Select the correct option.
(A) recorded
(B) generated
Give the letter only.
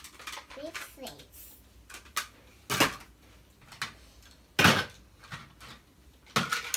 A